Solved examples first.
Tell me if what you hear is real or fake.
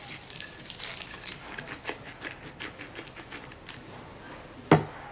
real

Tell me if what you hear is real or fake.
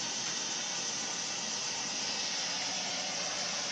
real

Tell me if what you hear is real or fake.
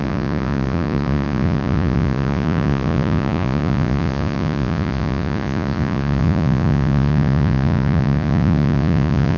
fake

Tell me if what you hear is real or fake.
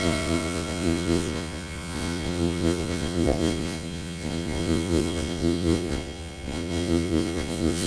fake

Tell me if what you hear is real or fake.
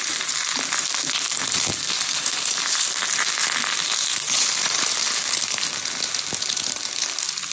real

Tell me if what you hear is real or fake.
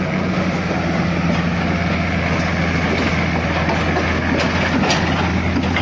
real